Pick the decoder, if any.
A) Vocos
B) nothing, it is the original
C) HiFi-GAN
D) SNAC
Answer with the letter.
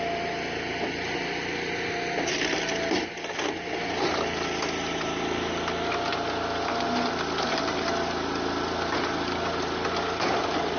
B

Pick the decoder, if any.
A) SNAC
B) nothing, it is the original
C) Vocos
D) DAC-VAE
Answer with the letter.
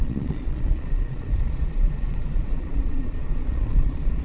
C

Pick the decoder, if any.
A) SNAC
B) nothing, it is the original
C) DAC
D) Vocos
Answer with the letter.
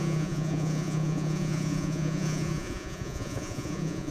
D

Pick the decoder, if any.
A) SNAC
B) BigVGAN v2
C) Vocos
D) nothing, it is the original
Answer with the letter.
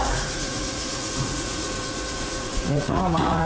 C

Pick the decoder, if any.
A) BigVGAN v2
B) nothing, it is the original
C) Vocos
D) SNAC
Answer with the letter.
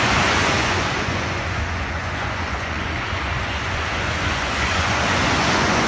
C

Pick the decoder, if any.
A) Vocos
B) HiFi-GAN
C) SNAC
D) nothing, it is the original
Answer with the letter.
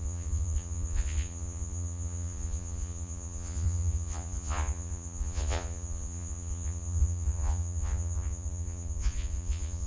A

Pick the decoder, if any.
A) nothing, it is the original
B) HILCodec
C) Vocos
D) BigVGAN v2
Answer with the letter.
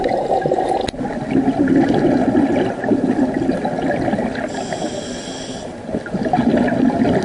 A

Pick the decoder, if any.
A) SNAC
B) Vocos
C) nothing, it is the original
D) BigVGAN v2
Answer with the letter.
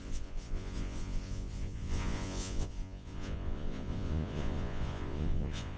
B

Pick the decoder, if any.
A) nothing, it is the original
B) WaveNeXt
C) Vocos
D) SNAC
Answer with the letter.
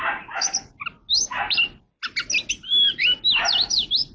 A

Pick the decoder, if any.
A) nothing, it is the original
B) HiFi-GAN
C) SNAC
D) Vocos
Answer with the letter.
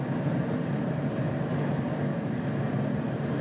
A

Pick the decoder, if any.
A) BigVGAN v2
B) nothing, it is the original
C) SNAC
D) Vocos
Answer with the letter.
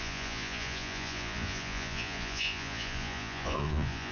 D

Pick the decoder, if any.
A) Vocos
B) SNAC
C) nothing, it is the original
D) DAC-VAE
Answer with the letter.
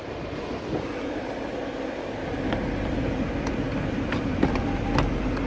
C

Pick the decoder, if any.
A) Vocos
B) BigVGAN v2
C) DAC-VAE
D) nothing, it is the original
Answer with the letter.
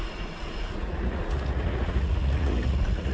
A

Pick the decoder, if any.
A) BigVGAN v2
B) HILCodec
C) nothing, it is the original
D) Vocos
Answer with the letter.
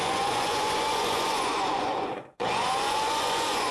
D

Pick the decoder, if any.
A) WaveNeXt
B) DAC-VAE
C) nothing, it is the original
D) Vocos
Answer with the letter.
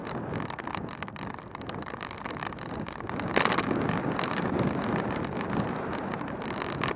C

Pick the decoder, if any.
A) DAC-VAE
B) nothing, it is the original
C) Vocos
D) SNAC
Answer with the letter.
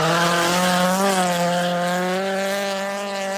B